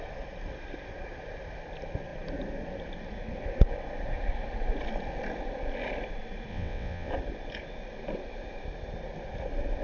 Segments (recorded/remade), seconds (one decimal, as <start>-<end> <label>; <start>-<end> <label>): 0.0-6.5 recorded; 6.5-7.1 remade; 7.1-9.8 recorded